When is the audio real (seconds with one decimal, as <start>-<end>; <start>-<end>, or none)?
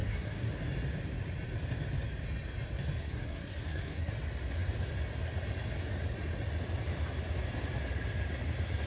0.5-3.0; 4.1-8.9